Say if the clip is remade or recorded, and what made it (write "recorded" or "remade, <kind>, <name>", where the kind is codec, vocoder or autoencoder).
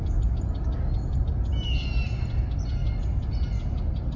recorded